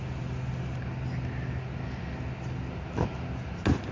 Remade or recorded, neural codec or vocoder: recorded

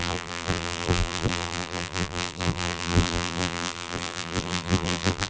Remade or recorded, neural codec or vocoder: remade, vocoder, BigVGAN v2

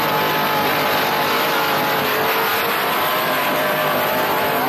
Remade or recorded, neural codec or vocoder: recorded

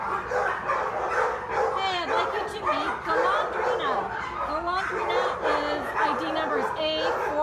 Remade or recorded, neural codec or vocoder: recorded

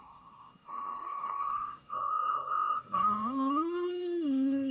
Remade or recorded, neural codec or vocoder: remade, codec, SNAC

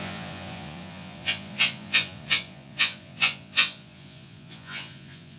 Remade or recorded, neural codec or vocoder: remade, vocoder, Vocos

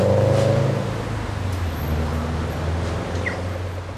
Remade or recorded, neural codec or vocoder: recorded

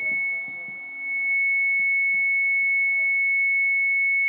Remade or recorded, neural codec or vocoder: recorded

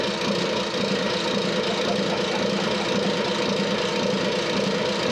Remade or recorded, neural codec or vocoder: recorded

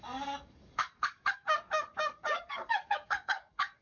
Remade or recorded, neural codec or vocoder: remade, codec, DAC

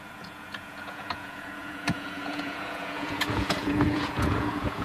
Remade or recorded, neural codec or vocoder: remade, vocoder, Vocos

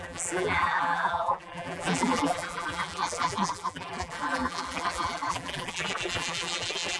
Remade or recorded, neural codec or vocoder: remade, vocoder, BigVGAN v2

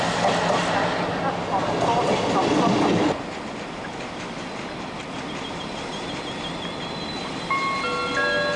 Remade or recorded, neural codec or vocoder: recorded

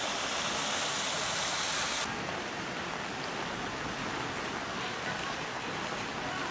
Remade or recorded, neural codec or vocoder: recorded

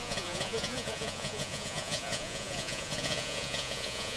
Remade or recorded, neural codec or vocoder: remade, vocoder, Vocos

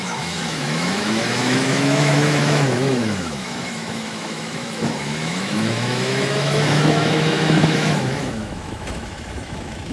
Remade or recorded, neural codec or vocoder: remade, autoencoder, DAC-VAE